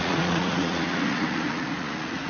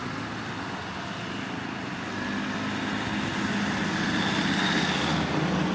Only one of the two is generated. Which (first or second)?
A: first